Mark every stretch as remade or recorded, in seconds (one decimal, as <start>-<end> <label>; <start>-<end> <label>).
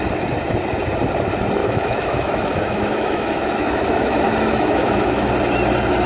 0.0-1.6 recorded; 1.6-5.3 remade; 5.3-6.1 recorded